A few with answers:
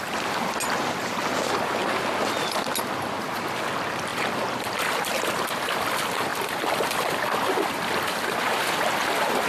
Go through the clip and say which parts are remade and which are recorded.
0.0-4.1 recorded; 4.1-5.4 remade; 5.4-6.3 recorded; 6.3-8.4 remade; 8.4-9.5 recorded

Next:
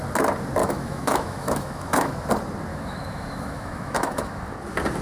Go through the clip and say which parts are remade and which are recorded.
0.0-0.6 recorded; 0.6-2.3 remade; 2.3-2.7 recorded; 2.7-4.4 remade; 4.4-5.0 recorded

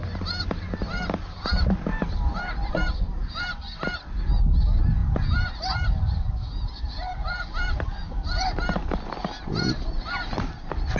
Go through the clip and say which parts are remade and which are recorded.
0.0-5.0 recorded; 5.0-8.6 remade; 8.6-11.0 recorded

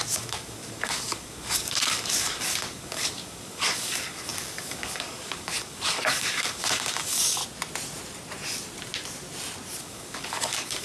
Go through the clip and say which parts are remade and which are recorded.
0.0-7.4 remade; 7.4-9.8 recorded; 9.8-10.8 remade

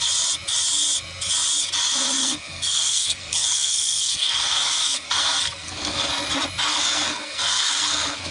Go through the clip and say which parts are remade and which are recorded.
0.0-2.2 recorded; 2.2-6.1 remade; 6.1-6.7 recorded; 6.7-8.3 remade

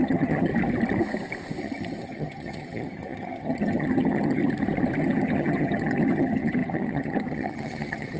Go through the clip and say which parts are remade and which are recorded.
0.0-0.5 remade; 0.5-1.6 recorded; 1.6-4.4 remade; 4.4-5.0 recorded; 5.0-8.2 remade

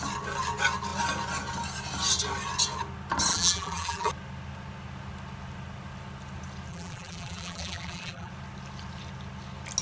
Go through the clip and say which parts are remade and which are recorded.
0.0-3.3 recorded; 3.3-4.1 remade; 4.1-6.7 recorded; 6.7-8.3 remade; 8.3-9.8 recorded